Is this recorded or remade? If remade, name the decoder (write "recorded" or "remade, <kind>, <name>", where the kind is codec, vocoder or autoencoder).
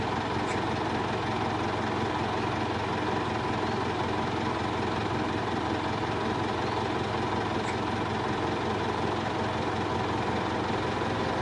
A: recorded